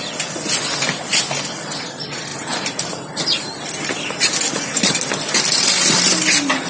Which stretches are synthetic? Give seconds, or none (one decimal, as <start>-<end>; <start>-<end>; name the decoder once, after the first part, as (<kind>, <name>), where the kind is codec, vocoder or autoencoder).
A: 2.3-3.2 (vocoder, BigVGAN v2)